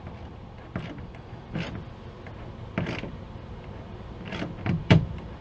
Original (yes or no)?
no